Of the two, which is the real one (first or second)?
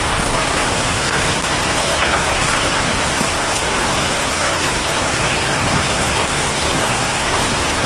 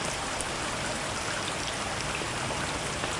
second